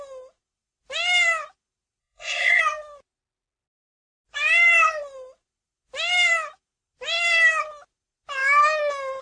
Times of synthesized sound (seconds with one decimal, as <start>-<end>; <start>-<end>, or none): 2.0-2.6